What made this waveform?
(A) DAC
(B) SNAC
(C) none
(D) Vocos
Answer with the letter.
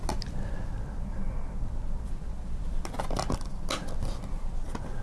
C